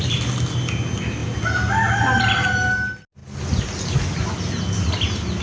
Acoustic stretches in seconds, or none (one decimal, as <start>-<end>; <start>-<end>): 0.0-5.4